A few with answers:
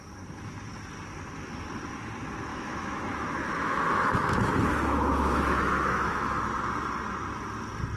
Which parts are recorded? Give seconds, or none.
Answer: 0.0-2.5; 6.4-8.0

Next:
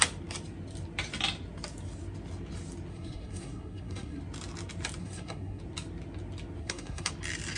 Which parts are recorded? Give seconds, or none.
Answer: 0.0-2.9; 4.2-5.0; 5.6-6.6; 7.1-7.6

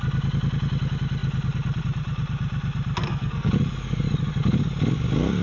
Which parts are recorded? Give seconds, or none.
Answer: 0.0-3.0; 3.5-5.4